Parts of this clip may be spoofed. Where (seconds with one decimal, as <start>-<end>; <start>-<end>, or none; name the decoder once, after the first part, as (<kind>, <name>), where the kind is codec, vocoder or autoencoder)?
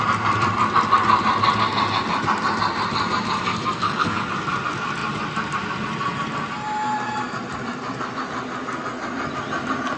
3.5-4.2 (codec, SNAC)